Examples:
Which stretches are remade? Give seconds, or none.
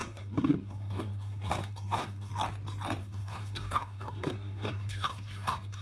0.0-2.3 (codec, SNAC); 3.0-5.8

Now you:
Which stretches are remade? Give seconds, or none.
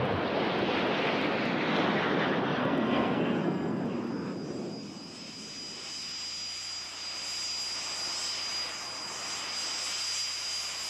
2.6-3.8 (codec, SNAC)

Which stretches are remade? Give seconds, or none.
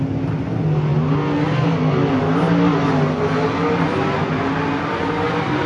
none